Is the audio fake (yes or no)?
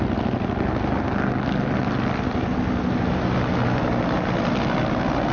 no